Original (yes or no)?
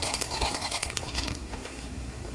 no